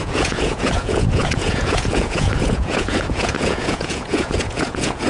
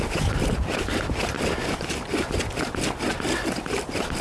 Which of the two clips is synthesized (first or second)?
first